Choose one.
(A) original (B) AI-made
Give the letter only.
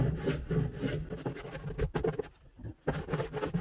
A